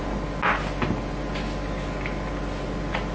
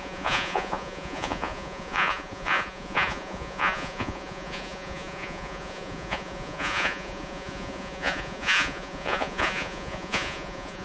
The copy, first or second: second